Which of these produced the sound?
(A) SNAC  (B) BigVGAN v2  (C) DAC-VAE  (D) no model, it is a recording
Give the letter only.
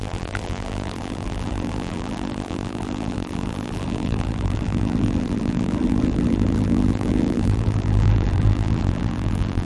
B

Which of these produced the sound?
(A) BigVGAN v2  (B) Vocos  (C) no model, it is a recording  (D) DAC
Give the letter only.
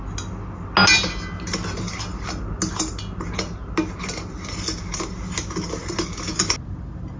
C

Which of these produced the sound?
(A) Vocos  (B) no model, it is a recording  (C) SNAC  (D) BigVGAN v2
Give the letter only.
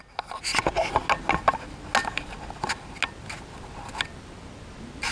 B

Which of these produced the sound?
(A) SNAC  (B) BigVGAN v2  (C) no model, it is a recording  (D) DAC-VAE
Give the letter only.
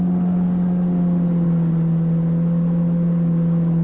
C